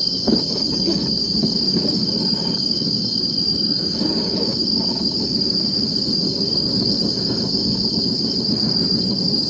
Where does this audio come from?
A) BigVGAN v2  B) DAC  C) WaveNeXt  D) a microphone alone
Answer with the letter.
B